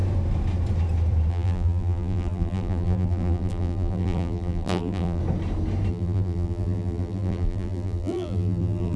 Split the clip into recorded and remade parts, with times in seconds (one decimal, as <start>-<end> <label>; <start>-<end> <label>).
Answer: 0.0-1.3 recorded; 1.3-5.2 remade; 5.2-5.9 recorded; 5.9-9.0 remade